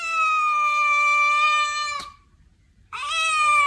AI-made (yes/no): no